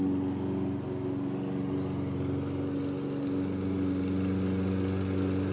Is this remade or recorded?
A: recorded